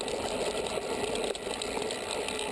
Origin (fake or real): real